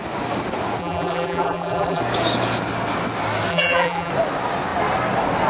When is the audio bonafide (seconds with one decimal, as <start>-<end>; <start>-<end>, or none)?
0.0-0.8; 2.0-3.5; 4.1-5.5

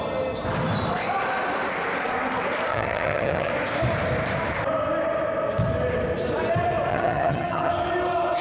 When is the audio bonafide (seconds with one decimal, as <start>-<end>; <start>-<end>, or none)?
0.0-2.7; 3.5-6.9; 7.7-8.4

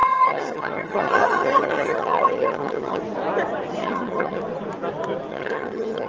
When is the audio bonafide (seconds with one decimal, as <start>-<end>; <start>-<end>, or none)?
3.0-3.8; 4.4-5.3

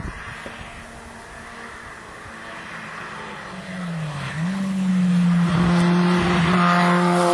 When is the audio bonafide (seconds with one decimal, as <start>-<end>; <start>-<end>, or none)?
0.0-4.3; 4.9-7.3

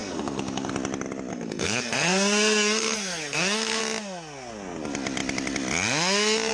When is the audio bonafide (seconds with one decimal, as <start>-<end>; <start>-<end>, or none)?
0.7-1.3; 3.8-6.5